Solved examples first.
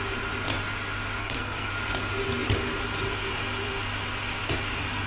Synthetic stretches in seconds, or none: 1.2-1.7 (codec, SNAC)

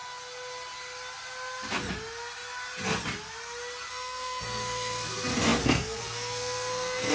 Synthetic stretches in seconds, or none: 3.9-7.1 (codec, SNAC)